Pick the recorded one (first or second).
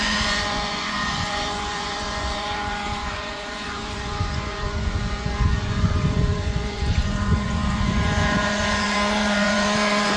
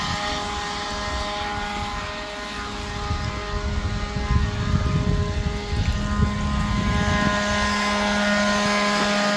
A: second